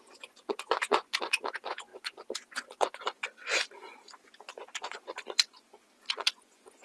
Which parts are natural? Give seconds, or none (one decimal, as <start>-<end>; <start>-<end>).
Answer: none